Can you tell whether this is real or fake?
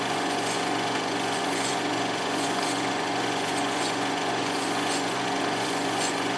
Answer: fake